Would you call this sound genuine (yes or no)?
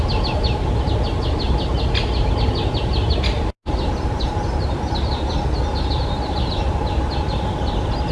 yes